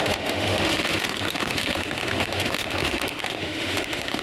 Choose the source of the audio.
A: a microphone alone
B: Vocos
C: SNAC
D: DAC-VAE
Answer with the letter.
D